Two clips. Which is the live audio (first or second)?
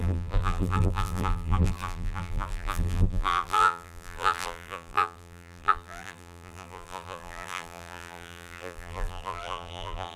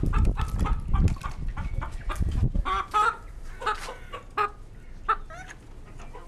second